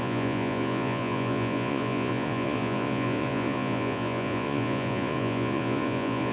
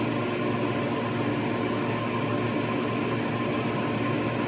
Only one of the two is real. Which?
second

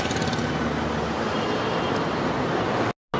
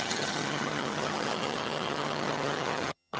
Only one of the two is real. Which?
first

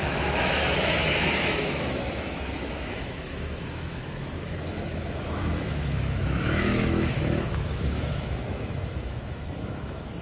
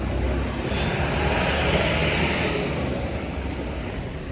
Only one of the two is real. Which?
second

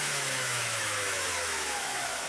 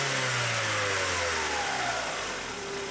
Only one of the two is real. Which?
second